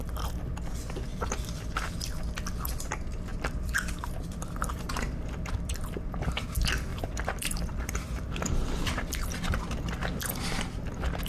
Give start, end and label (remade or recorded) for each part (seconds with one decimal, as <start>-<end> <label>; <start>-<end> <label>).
0.0-1.1 recorded; 1.1-2.0 remade; 2.0-3.3 recorded; 3.3-6.1 remade; 6.1-6.9 recorded; 6.9-9.5 remade; 9.5-11.3 recorded